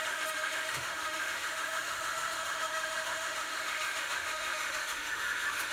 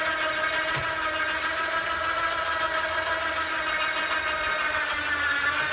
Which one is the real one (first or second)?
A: second